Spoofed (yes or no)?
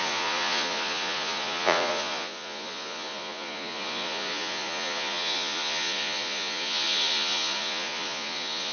yes